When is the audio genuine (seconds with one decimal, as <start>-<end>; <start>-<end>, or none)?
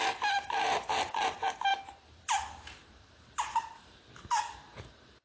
none